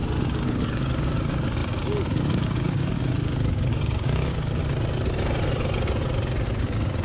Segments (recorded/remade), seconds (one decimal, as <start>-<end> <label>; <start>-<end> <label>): 0.0-4.6 remade; 4.6-6.6 recorded; 6.6-7.0 remade